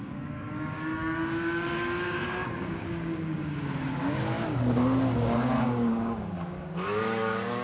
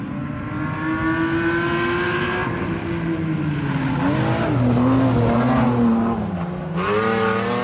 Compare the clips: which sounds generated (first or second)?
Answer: first